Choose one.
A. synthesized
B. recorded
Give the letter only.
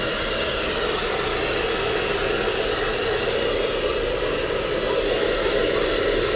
B